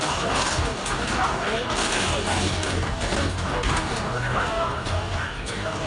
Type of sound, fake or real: fake